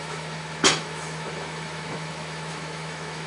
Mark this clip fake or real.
fake